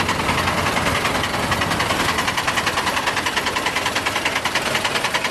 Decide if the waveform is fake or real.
real